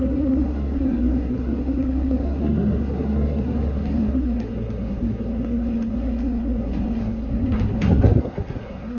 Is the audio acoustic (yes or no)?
no